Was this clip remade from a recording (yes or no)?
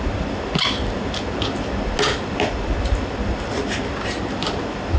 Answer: no